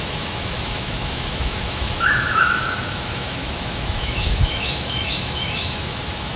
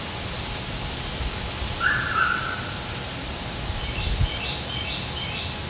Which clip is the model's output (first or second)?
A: first